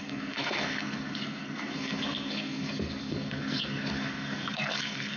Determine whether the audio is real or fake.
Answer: fake